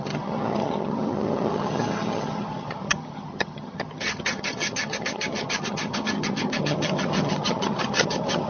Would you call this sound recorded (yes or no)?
no